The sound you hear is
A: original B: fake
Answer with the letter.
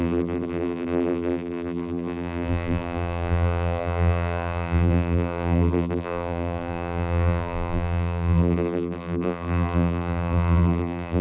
B